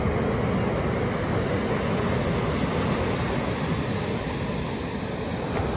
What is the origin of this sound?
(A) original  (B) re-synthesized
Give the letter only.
A